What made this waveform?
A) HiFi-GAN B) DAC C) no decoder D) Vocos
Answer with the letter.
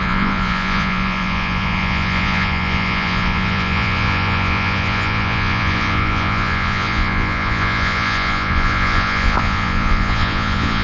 D